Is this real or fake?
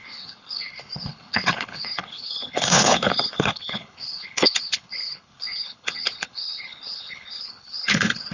fake